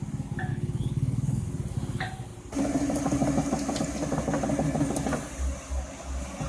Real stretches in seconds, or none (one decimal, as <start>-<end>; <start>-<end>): 0.0-0.5; 1.5-6.5